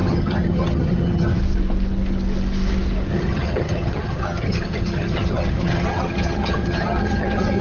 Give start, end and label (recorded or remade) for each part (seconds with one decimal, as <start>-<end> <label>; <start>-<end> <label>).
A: 0.0-1.4 remade; 1.4-3.1 recorded; 3.1-7.6 remade